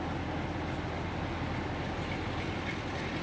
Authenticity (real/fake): real